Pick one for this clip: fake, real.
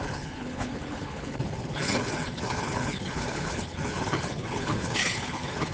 fake